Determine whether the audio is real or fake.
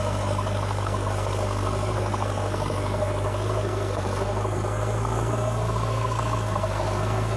fake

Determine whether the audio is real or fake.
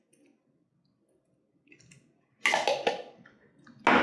real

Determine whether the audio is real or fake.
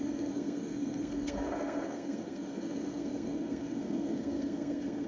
fake